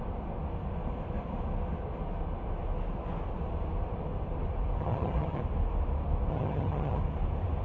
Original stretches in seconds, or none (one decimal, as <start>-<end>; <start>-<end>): 0.0-4.8; 5.4-6.3; 7.0-7.6

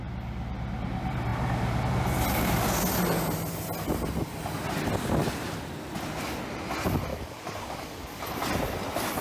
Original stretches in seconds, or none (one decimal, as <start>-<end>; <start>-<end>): 0.0-7.1; 8.4-9.2

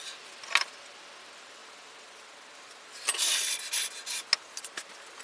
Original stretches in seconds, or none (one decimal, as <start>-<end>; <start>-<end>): 0.0-5.2

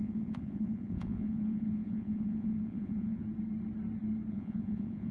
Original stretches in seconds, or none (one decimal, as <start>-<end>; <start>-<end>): 3.2-4.3

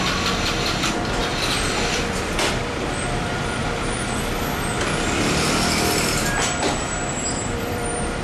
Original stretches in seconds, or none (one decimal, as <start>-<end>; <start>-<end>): 3.6-6.3

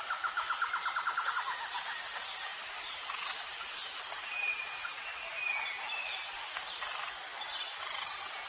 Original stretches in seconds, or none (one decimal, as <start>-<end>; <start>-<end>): 0.0-0.8; 1.3-2.5; 3.7-8.5

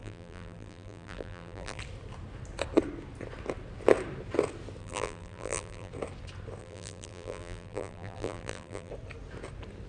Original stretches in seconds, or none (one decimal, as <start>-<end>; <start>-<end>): 1.8-4.8; 5.9-6.6; 8.9-9.9